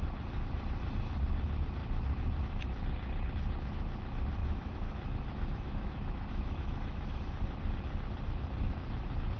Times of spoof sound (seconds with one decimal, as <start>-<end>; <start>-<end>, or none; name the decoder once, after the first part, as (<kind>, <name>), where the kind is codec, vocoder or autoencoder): 4.4-7.3 (autoencoder, DAC-VAE)